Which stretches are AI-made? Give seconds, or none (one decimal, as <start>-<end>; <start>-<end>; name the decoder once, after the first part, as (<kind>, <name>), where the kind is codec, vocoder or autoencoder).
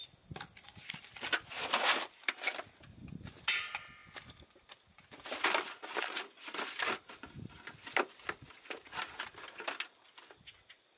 none